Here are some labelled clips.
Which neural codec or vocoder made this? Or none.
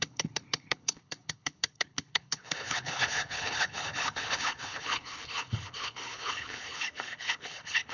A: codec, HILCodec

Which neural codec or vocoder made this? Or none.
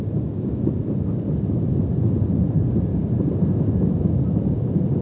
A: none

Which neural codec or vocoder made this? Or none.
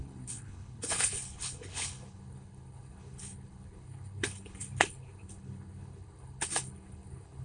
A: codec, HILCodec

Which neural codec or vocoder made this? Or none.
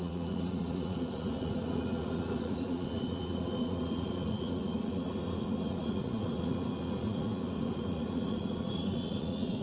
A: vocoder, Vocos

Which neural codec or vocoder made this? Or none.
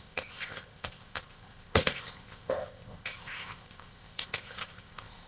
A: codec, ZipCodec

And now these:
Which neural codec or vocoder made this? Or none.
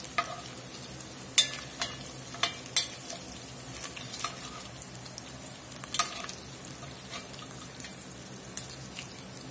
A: none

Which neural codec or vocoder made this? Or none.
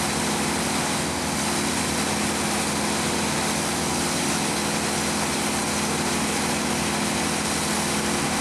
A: none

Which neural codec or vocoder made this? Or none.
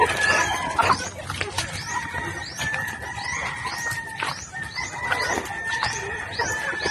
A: none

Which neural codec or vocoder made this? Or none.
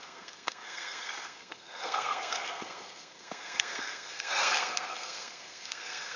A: codec, SNAC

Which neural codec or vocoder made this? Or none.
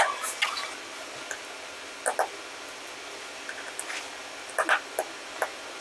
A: none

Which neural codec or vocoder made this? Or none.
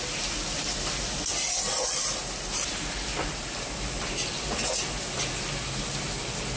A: none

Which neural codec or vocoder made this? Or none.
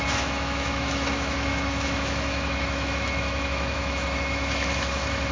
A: autoencoder, DAC-VAE